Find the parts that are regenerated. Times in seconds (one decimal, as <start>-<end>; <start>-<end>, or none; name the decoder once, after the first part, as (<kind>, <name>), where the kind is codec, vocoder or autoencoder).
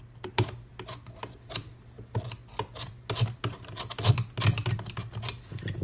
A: none